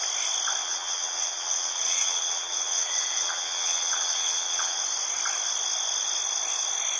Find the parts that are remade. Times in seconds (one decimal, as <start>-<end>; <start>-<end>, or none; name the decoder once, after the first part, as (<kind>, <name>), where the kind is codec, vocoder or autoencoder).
0.6-4.8 (vocoder, WaveNeXt)